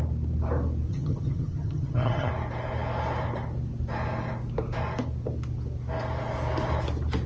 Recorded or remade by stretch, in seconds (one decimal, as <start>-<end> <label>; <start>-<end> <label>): 0.0-0.9 recorded; 0.9-2.3 remade; 2.3-7.3 recorded